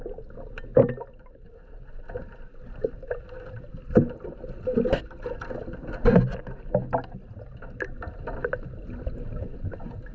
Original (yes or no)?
yes